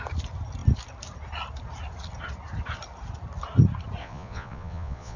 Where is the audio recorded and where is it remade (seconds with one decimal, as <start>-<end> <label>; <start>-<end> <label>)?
0.0-4.0 recorded; 4.0-5.2 remade